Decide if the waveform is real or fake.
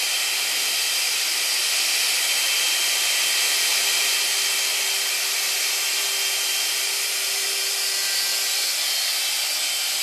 real